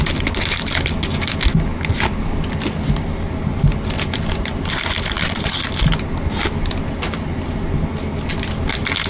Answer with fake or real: real